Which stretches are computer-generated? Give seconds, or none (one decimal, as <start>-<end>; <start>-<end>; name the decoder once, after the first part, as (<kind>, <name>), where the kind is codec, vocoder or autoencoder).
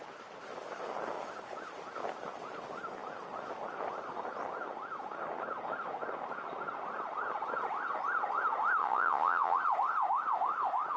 8.8-9.6 (vocoder, Vocos)